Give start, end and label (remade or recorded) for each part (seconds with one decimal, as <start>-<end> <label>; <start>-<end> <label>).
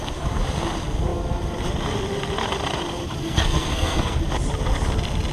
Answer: 0.0-3.2 recorded; 3.2-4.2 remade; 4.2-5.3 recorded